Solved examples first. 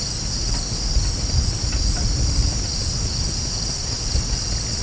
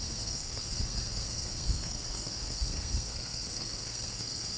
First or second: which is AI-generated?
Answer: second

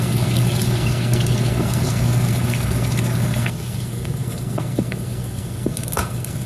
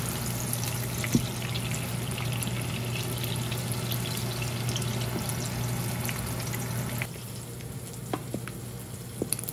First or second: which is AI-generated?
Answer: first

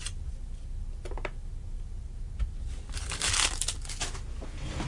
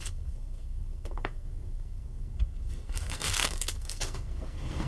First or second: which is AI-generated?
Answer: second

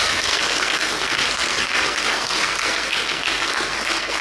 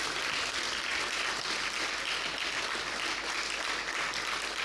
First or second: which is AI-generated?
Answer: first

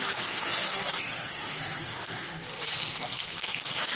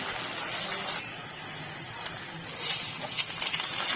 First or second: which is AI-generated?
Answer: first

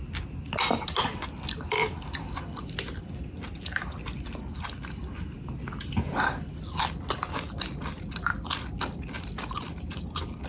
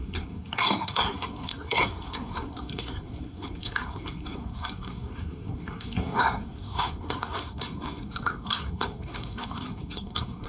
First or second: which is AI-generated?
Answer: second